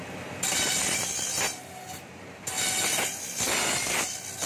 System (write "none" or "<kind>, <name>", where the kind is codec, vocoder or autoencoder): none